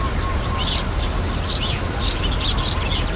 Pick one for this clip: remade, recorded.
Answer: recorded